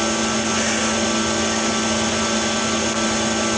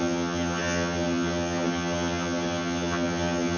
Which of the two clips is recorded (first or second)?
first